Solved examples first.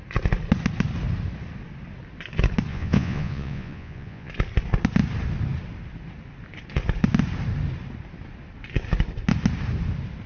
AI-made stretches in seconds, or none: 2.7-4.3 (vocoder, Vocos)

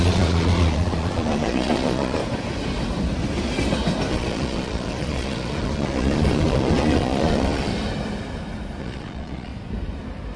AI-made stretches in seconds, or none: 0.0-2.2 (vocoder, Vocos); 4.1-7.7; 8.8-9.5

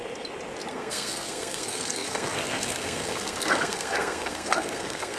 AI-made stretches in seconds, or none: 0.7-5.2 (codec, SNAC)